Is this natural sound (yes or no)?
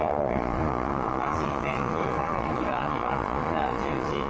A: no